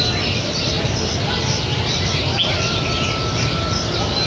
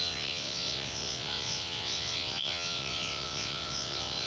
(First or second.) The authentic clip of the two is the first